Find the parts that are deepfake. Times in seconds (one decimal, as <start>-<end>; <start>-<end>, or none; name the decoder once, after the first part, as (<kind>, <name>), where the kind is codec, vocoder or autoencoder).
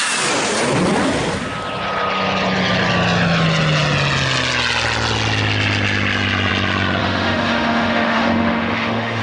7.0-9.2 (autoencoder, DAC-VAE)